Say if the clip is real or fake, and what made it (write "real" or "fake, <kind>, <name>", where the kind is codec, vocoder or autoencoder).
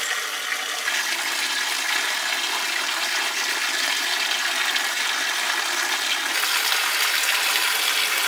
real